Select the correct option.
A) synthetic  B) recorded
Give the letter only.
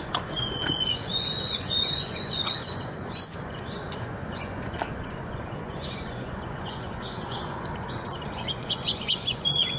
A